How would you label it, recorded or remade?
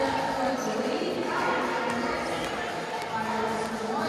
recorded